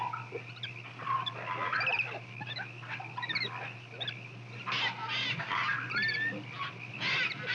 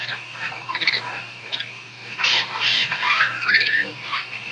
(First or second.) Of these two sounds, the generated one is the second